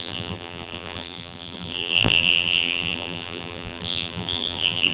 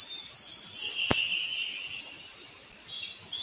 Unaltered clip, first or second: second